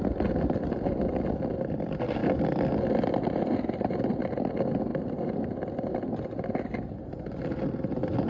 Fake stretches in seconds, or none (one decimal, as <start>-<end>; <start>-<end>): none